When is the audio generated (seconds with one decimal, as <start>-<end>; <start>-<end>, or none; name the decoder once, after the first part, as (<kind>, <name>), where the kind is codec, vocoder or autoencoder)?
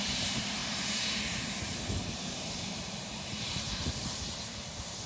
0.0-5.1 (vocoder, BigVGAN v2)